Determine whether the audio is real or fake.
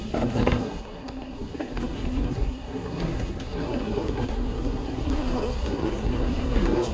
fake